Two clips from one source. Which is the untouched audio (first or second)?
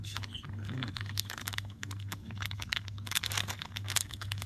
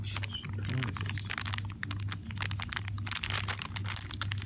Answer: second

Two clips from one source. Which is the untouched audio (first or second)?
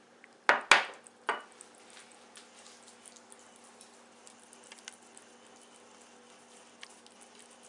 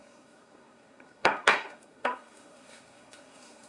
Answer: first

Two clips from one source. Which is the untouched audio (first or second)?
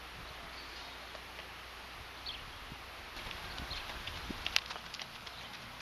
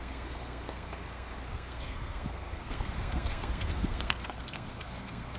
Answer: first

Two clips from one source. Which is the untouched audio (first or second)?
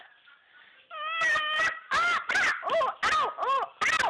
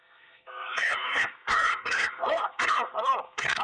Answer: first